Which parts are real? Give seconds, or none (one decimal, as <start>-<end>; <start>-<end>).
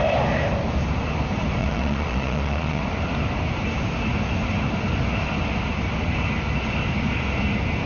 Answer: 0.0-1.6; 2.8-7.9